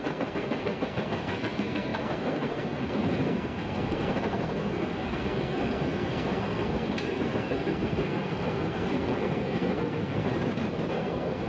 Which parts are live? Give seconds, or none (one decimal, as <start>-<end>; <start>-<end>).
10.3-10.9